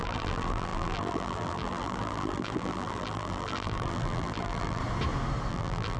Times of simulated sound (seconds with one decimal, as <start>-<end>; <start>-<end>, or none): 0.0-4.8; 5.5-6.0